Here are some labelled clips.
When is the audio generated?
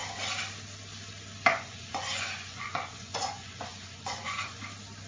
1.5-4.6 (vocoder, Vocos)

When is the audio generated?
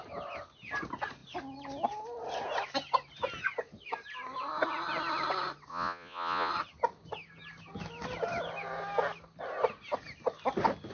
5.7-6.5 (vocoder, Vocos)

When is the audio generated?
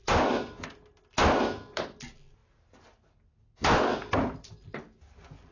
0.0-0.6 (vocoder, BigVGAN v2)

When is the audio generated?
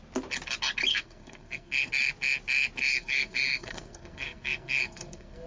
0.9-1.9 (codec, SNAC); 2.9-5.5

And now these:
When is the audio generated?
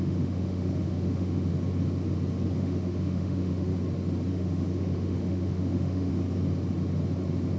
0.0-1.5 (autoencoder, DAC-VAE); 2.6-3.7; 4.3-6.1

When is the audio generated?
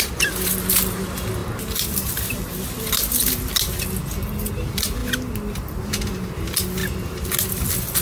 none